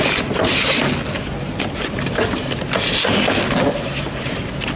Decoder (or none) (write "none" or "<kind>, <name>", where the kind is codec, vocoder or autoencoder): none